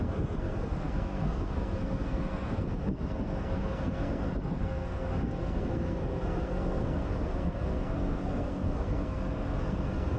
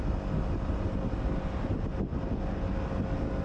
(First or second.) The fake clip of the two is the first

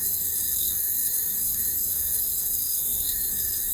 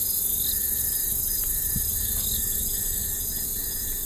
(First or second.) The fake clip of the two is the first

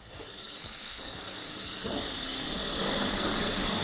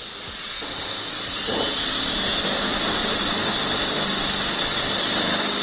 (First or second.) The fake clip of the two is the first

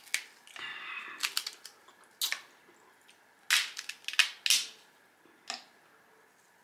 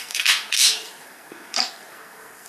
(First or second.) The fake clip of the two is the second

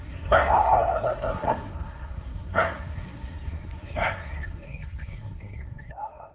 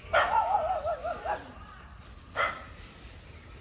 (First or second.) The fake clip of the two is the first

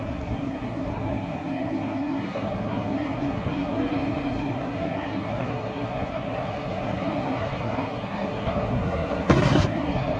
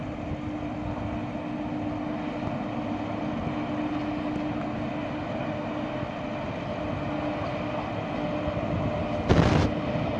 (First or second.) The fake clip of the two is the first